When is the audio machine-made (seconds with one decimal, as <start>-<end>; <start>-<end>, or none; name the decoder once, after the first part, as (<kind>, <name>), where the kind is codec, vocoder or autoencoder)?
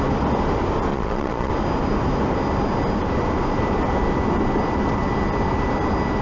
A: 0.9-1.5 (vocoder, Vocos)